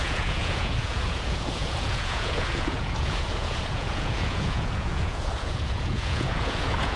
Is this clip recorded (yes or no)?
no